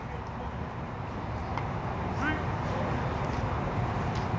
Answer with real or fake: real